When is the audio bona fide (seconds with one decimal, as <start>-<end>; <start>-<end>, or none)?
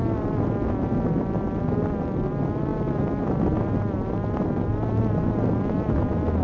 0.0-6.4